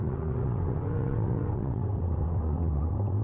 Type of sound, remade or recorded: remade